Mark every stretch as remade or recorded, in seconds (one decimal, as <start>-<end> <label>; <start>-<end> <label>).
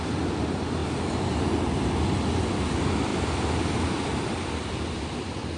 0.0-3.1 recorded; 3.1-4.5 remade; 4.5-5.6 recorded